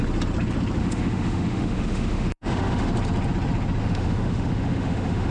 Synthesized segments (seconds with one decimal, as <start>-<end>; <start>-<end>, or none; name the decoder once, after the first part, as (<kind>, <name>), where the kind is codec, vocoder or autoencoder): 0.8-2.9 (autoencoder, DAC-VAE); 3.8-5.3